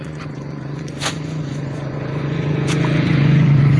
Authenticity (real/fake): fake